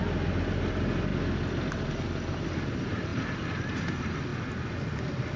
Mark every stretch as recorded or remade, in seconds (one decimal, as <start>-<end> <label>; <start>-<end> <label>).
0.0-5.4 recorded